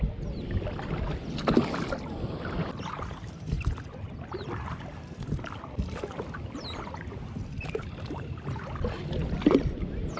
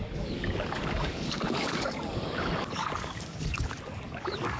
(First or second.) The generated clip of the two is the second